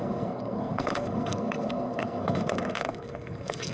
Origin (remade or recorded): remade